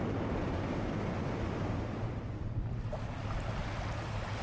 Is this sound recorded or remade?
recorded